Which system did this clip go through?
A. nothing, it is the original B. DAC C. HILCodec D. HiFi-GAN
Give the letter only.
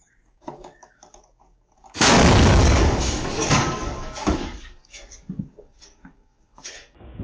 B